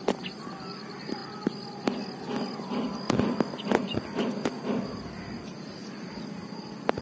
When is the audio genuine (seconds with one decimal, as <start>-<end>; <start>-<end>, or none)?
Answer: 0.0-7.0